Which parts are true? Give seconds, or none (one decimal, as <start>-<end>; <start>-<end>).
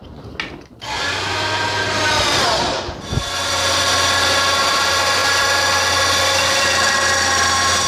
0.0-7.9